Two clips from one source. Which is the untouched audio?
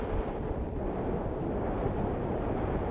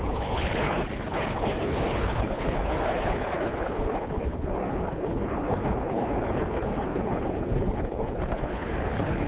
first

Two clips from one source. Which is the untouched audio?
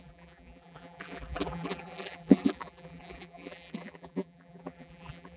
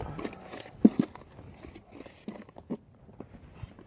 second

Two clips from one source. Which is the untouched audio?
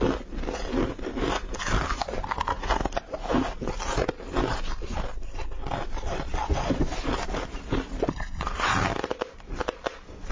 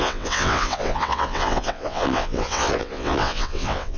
first